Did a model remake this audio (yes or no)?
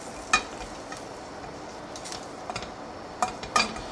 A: no